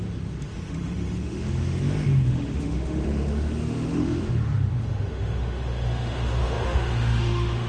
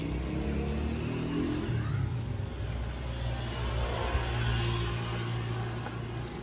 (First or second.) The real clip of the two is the second